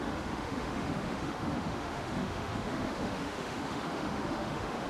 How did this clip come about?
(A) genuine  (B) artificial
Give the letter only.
B